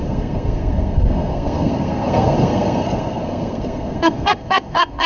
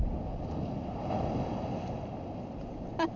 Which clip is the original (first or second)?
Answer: second